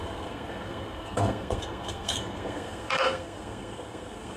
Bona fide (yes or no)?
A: no